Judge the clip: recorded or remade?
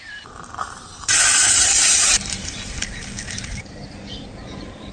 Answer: remade